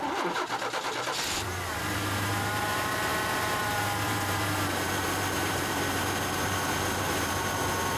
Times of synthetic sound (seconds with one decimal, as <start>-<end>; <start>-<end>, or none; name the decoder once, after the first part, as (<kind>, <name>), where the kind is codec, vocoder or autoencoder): 0.0-0.5 (vocoder, BigVGAN v2); 1.8-8.0